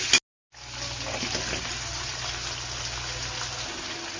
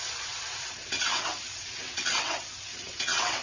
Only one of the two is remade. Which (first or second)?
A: second